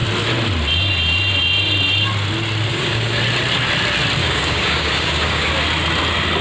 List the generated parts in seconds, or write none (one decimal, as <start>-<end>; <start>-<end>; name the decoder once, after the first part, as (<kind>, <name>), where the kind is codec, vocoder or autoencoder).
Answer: 2.7-3.2 (codec, DAC); 4.2-5.5